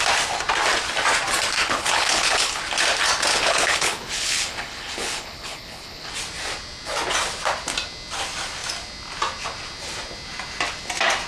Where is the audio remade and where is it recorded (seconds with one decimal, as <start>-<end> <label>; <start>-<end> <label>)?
0.0-1.6 recorded; 1.6-2.6 remade; 2.6-3.3 recorded; 3.3-6.1 remade; 6.1-11.3 recorded